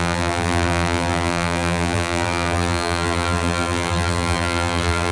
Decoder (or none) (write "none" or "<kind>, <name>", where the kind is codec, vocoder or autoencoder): vocoder, BigVGAN v2